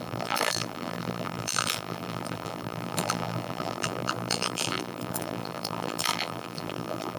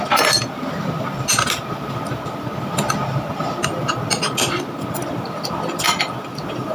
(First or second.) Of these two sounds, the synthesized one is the first